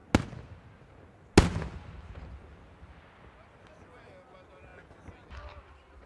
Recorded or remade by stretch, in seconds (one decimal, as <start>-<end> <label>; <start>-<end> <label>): 0.0-6.1 recorded